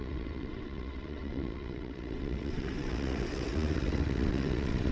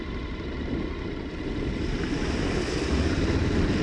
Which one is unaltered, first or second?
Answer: second